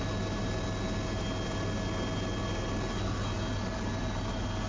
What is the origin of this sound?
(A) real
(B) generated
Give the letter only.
A